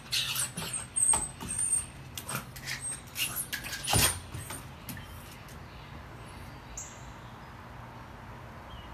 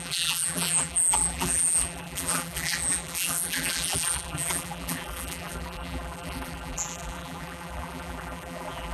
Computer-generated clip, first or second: second